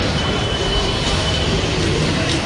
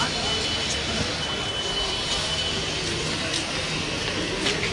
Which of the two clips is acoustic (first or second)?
second